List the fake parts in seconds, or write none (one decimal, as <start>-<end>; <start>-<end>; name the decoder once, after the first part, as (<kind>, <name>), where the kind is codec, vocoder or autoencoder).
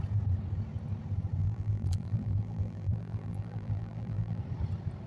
1.4-4.4 (vocoder, BigVGAN v2)